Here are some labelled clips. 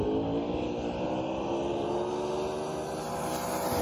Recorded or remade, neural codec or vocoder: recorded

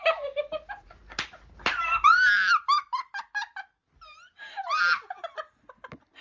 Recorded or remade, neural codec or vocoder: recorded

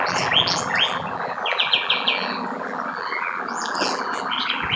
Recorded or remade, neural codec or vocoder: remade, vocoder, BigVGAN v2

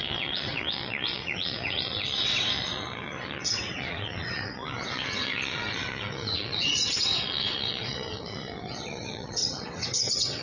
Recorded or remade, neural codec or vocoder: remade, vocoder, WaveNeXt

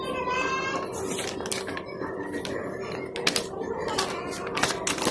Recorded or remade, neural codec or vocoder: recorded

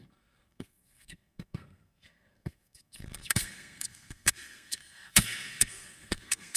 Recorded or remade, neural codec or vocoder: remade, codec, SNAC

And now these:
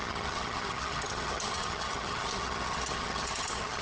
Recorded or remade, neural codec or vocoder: remade, vocoder, HiFi-GAN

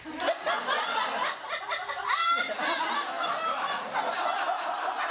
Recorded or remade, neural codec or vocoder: recorded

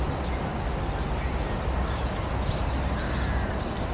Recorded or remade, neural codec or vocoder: recorded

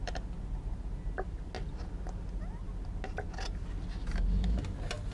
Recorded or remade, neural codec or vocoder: recorded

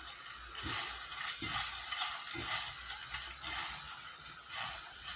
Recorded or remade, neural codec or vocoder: recorded